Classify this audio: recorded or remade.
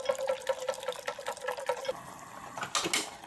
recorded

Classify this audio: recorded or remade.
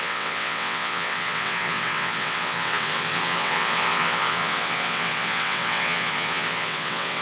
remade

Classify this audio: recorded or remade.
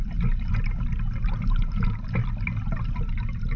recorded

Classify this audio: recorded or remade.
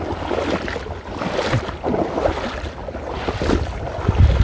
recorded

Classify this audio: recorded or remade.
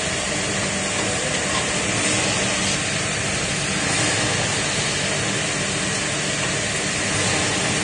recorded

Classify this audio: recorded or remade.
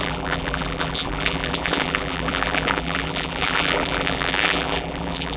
remade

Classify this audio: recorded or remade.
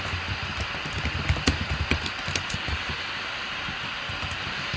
recorded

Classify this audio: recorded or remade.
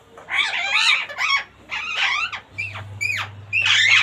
recorded